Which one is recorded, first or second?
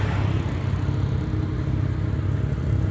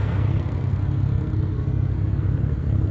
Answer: first